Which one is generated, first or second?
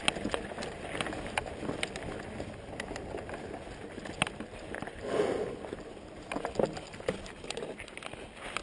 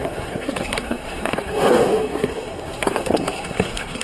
second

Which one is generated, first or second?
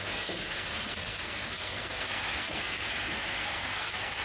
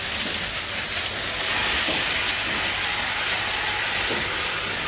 first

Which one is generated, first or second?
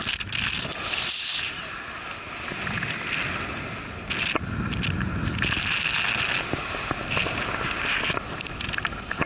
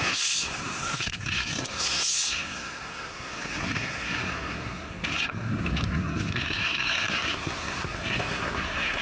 second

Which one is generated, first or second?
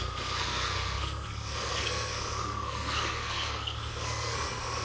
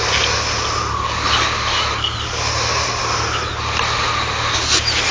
first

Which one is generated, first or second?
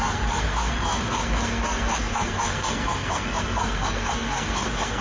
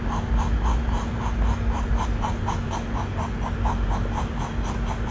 first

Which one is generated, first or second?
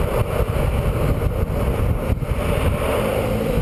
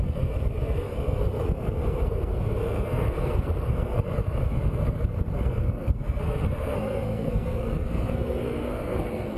second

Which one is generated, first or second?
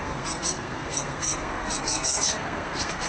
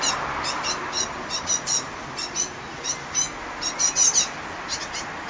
first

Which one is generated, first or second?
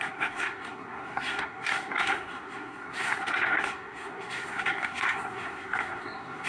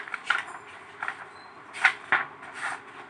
first